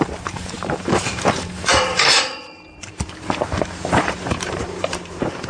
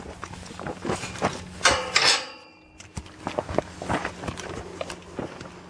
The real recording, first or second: second